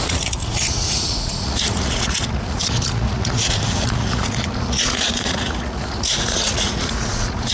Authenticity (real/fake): fake